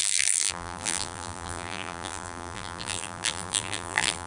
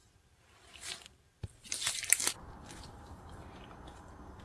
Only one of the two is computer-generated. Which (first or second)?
first